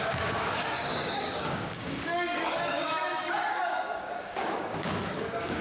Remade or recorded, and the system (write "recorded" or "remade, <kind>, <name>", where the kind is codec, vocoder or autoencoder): remade, codec, DAC